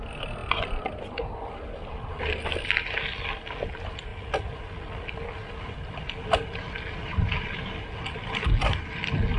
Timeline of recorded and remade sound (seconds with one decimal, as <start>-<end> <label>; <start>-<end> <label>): 0.0-9.4 recorded